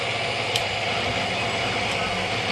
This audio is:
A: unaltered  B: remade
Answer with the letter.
A